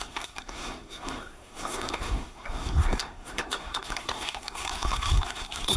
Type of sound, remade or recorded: remade